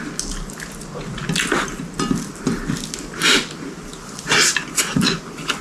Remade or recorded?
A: recorded